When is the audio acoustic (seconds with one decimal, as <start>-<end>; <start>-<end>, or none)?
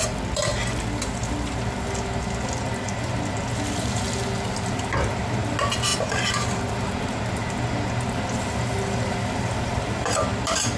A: 0.0-10.8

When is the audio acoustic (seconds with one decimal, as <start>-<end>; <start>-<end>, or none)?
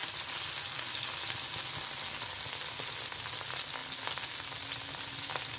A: 0.0-5.6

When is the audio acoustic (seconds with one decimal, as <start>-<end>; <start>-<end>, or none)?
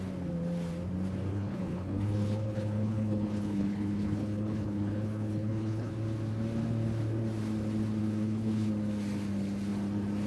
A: 0.0-1.3; 5.9-8.0; 8.7-10.3